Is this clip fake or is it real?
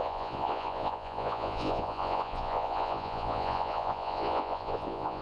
fake